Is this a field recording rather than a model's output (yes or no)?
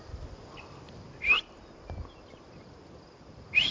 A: yes